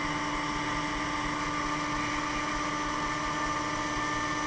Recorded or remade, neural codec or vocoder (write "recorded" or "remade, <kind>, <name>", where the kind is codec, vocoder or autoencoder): recorded